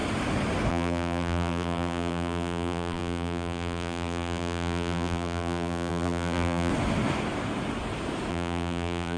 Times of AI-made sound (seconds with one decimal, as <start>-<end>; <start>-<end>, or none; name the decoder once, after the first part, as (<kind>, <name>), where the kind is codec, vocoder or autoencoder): 0.7-6.7 (vocoder, BigVGAN v2); 8.3-9.2